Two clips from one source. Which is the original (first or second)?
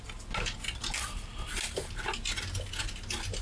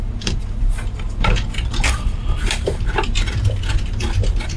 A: first